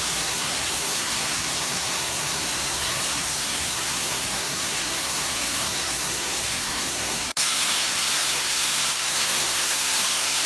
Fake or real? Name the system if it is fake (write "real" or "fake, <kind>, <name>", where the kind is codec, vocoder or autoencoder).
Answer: fake, codec, SNAC